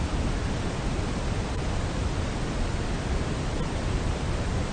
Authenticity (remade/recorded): recorded